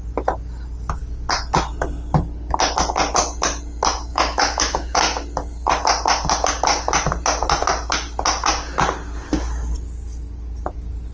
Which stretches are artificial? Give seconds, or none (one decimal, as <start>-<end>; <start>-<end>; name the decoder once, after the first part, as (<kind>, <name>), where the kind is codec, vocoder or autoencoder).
4.1-5.0 (autoencoder, DAC-VAE)